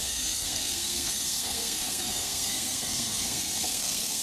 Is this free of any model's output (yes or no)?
no